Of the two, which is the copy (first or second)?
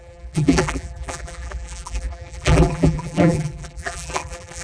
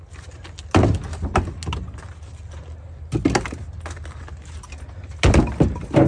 first